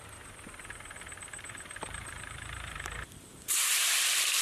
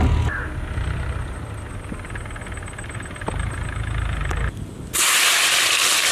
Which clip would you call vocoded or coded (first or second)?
first